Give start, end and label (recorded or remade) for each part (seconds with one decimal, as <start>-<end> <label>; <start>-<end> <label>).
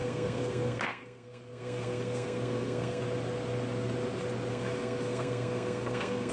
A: 0.0-3.0 remade; 3.0-4.5 recorded; 4.5-6.3 remade